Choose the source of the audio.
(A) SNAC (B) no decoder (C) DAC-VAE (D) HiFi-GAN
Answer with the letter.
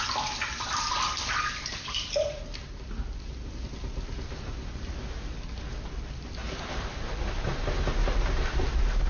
B